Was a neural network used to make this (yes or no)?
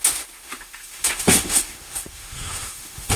yes